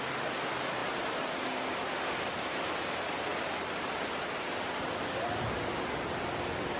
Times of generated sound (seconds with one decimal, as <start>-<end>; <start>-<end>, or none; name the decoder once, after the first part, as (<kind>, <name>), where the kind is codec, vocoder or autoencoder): none